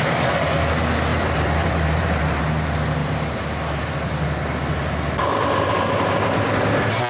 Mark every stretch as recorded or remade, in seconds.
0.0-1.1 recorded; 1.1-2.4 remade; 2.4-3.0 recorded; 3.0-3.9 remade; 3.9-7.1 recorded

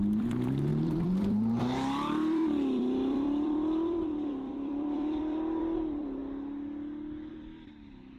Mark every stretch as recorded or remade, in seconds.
0.0-6.2 remade; 6.2-7.3 recorded; 7.3-8.2 remade

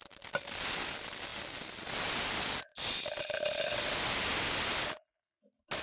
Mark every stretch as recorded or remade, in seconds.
0.0-5.8 recorded

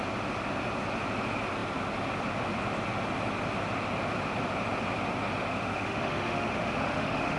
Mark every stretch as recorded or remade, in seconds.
0.0-5.5 recorded; 5.5-7.4 remade

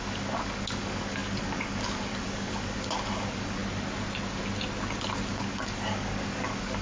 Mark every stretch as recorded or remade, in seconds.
0.0-3.6 remade; 3.6-5.3 recorded; 5.3-6.8 remade

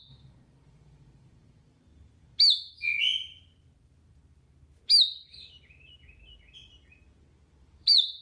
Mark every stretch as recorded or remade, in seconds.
0.0-1.9 remade; 1.9-3.8 recorded; 3.8-4.2 remade; 4.2-7.6 recorded; 7.6-8.2 remade

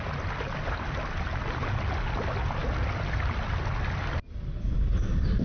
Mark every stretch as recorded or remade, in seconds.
0.0-5.4 recorded

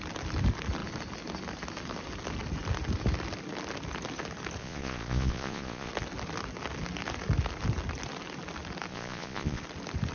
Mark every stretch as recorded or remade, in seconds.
0.0-4.6 recorded; 4.6-5.9 remade; 5.9-8.9 recorded; 8.9-9.6 remade; 9.6-10.1 recorded